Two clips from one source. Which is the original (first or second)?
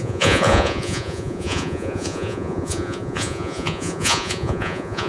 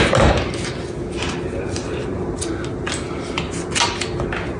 second